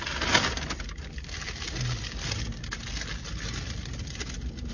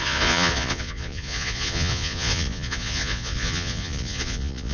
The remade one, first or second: second